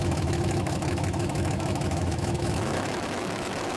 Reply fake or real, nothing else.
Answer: fake